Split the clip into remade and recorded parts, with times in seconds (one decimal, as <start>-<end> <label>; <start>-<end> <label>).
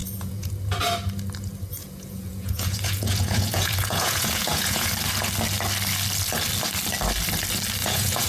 0.0-0.5 remade; 0.5-1.8 recorded; 1.8-4.9 remade; 4.9-7.8 recorded; 7.8-8.3 remade